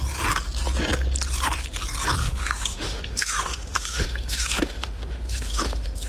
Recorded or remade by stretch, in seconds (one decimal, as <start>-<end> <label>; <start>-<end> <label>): 0.0-2.2 recorded; 2.2-6.1 remade